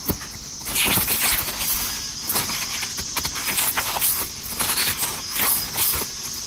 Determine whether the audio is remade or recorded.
recorded